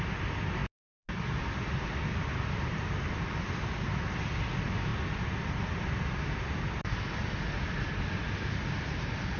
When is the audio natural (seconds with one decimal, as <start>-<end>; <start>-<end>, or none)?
0.0-9.4